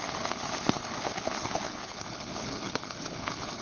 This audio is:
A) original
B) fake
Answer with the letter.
B